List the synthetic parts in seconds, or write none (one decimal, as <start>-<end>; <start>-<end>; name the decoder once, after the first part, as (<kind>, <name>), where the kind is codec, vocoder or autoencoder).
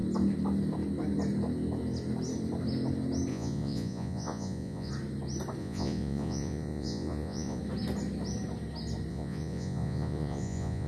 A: 3.3-4.9 (vocoder, Vocos); 5.6-7.6; 9.1-10.9